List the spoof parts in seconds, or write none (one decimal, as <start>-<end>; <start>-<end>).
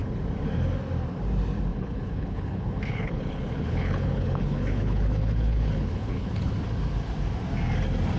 1.7-6.5